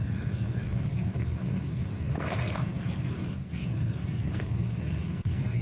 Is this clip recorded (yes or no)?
no